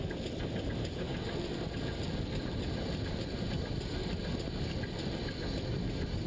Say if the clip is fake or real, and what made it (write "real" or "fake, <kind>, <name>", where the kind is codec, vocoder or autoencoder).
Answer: real